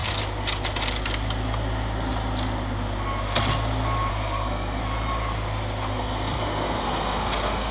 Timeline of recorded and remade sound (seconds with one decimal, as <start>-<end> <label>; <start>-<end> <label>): 0.0-4.1 recorded; 4.1-4.8 remade; 4.8-5.9 recorded; 5.9-7.7 remade